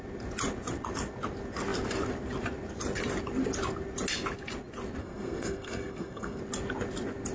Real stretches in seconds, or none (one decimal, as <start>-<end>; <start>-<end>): 0.0-5.0; 6.4-7.3